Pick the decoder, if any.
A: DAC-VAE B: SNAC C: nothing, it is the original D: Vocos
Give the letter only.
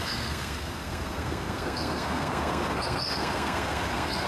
B